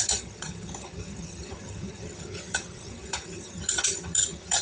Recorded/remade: remade